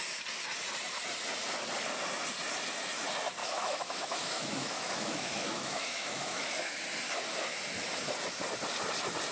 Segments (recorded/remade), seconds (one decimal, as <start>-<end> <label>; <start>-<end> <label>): 0.0-3.4 recorded; 3.4-6.7 remade; 6.7-9.3 recorded